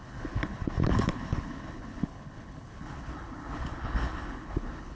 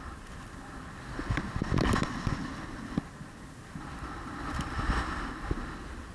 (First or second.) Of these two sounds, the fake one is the first